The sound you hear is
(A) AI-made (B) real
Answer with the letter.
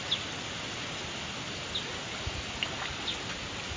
B